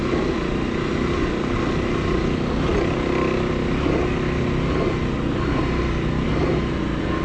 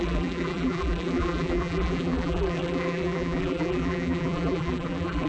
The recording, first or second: first